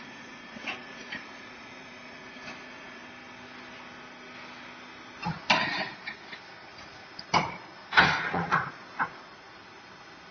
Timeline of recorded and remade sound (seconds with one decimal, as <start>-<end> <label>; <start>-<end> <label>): 0.0-3.0 remade; 3.0-8.2 recorded; 8.2-9.5 remade; 9.5-10.3 recorded